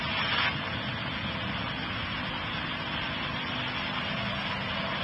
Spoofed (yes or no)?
no